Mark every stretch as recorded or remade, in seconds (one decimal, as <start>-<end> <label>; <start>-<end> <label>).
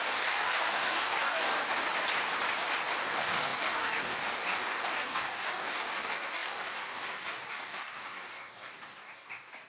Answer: 0.0-1.5 remade; 1.5-3.0 recorded; 3.0-9.7 remade